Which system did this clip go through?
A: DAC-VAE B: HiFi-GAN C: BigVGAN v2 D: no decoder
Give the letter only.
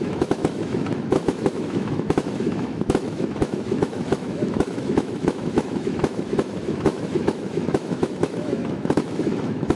A